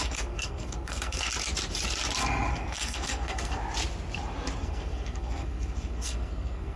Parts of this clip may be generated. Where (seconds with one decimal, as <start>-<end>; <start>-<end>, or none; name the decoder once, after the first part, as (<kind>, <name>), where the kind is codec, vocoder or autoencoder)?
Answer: 0.0-1.3 (codec, SNAC); 2.5-3.6; 4.6-6.8